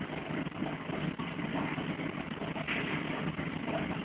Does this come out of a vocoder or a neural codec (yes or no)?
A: no